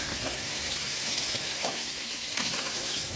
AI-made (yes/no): yes